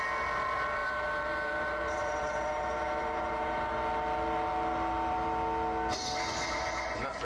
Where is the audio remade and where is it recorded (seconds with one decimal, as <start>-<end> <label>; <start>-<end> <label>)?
0.0-0.8 recorded; 0.8-3.7 remade; 3.7-7.2 recorded